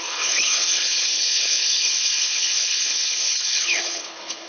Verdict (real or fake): fake